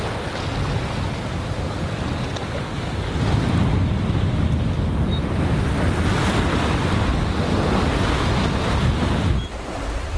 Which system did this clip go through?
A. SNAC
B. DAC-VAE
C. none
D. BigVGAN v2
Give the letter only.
C